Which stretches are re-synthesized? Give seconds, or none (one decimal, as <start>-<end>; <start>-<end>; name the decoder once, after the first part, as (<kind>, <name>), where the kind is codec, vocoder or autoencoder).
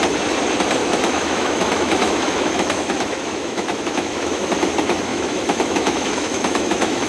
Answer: 0.8-4.5 (autoencoder, DAC-VAE); 5.1-7.1